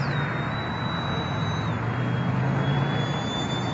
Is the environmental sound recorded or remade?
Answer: recorded